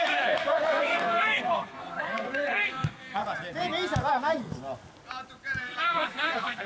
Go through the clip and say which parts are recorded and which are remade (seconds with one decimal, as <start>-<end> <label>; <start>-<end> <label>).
0.0-3.2 remade; 3.2-4.1 recorded; 4.1-4.5 remade; 4.5-5.6 recorded; 5.6-6.7 remade